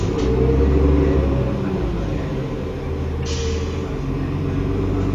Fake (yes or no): no